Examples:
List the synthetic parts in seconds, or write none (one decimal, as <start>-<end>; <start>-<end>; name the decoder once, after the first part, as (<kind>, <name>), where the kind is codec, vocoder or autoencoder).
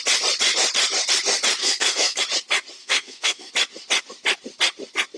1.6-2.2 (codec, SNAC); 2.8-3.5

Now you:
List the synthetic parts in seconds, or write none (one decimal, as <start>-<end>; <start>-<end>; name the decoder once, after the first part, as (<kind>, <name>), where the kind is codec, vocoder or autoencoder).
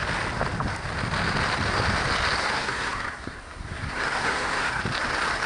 2.4-4.8 (codec, SNAC)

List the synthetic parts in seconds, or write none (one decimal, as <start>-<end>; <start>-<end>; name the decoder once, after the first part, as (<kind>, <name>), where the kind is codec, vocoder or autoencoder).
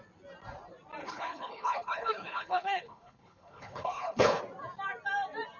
1.0-4.4 (codec, HILCodec)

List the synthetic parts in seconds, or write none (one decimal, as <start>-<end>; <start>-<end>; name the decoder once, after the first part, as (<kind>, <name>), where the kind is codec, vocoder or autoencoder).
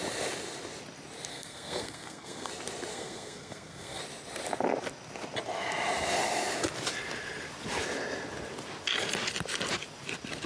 1.3-2.5 (codec, SNAC); 2.9-4.0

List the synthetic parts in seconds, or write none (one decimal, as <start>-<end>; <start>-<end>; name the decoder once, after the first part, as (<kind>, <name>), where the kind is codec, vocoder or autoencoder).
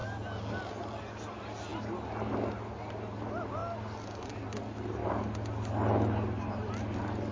0.5-1.7 (vocoder, BigVGAN v2); 2.3-3.6; 4.3-5.0; 6.5-7.3